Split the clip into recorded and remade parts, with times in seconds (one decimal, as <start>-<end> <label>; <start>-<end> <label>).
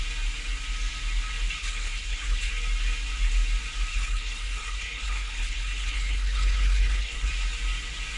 0.0-1.6 recorded; 1.6-2.5 remade; 2.5-3.9 recorded; 3.9-7.3 remade; 7.3-8.2 recorded